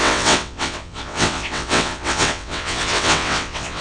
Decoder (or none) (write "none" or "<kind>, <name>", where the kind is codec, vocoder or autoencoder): vocoder, WaveNeXt